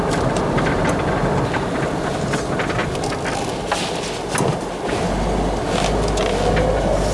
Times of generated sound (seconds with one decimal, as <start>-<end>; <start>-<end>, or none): none